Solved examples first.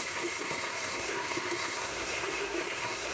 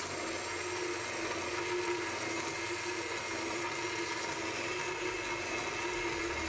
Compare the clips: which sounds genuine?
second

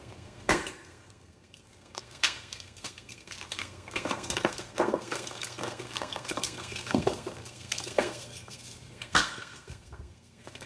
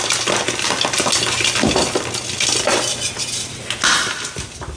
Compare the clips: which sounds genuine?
second